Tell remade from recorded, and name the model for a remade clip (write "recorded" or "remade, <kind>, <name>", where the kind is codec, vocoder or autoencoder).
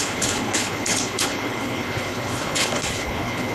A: remade, codec, HILCodec